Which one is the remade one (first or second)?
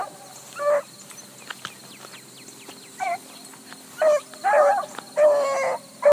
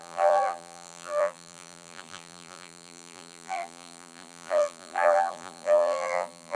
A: second